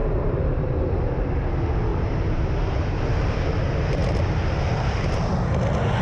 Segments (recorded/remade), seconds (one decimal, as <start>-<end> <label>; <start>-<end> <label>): 0.0-1.5 remade; 1.5-1.9 recorded; 1.9-3.0 remade; 3.0-6.0 recorded